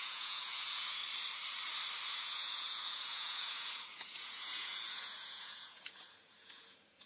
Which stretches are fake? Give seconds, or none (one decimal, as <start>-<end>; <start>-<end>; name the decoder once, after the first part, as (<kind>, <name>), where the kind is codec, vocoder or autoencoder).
0.0-1.0 (vocoder, Vocos); 2.1-7.1